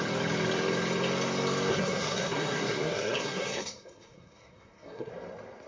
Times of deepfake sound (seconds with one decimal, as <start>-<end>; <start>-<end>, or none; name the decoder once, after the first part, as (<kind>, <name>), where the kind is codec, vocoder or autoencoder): 1.7-5.1 (codec, SNAC)